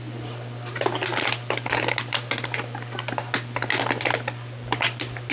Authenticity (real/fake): real